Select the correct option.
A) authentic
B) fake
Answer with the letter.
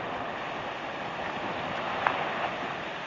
A